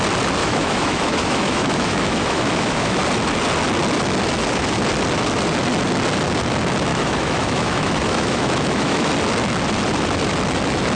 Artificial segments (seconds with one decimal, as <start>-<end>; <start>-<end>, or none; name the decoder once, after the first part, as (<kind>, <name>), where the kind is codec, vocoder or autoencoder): 0.4-3.0 (autoencoder, DAC-VAE); 6.9-9.1